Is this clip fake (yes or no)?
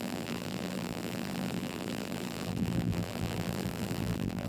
yes